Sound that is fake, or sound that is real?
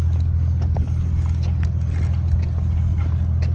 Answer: real